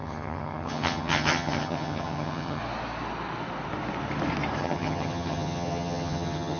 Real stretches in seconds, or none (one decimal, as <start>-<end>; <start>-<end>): 2.6-4.6

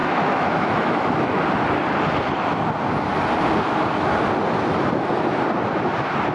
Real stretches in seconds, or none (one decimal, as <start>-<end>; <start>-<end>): 1.4-6.3

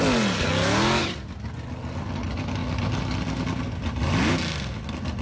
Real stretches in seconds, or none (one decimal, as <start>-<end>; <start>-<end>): 0.0-5.2

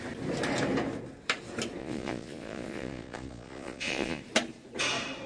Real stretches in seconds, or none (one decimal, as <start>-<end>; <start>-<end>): 0.0-1.8; 4.2-5.3